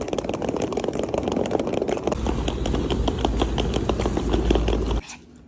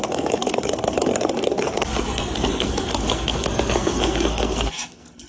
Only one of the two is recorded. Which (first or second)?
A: first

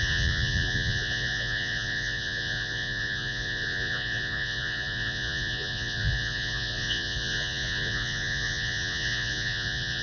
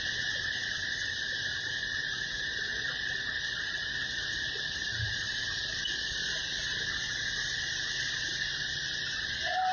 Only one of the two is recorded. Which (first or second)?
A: second